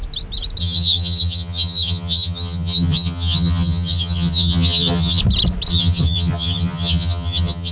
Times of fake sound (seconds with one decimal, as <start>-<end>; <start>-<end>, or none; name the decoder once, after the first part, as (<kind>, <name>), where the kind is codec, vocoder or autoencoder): 0.6-5.2 (vocoder, HiFi-GAN); 5.7-7.7